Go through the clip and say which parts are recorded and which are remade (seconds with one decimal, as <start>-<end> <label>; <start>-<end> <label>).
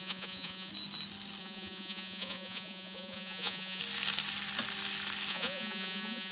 0.0-0.7 remade; 0.7-1.4 recorded; 1.4-3.8 remade; 3.8-5.3 recorded; 5.3-6.3 remade